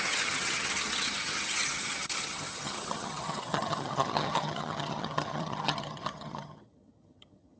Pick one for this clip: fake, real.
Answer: fake